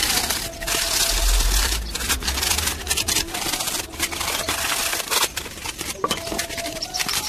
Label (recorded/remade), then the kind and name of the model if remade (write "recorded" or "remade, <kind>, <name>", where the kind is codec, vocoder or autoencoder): remade, vocoder, BigVGAN v2